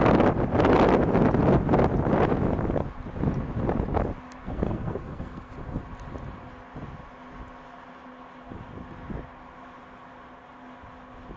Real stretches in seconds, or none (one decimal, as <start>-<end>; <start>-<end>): 0.0-4.4; 5.5-11.4